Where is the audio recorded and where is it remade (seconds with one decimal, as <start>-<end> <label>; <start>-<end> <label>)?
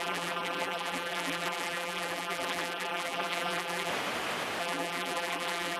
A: 0.0-3.9 remade; 3.9-4.6 recorded; 4.6-5.8 remade